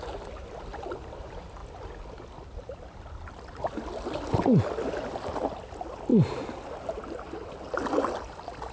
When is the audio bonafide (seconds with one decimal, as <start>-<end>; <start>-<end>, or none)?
0.0-8.7